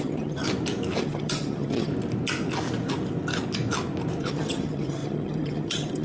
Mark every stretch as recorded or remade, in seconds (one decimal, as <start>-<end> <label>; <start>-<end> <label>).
0.0-0.4 remade; 0.4-1.0 recorded; 1.0-1.9 remade; 1.9-4.2 recorded; 4.2-6.0 remade